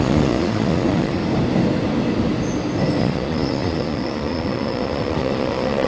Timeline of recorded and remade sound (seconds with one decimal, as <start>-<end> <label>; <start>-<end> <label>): 0.0-1.2 remade; 1.2-3.0 recorded; 3.0-5.9 remade